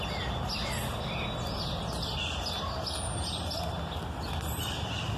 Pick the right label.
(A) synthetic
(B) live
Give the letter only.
B